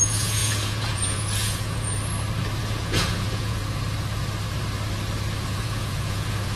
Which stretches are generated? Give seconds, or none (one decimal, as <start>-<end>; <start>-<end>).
0.0-2.0; 2.6-3.6; 5.5-6.6